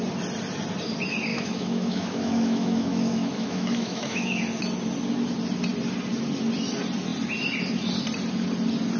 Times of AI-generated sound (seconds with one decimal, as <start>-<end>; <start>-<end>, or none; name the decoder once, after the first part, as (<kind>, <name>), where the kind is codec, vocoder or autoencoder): 1.3-4.4 (autoencoder, DAC-VAE)